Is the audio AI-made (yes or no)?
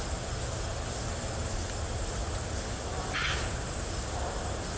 no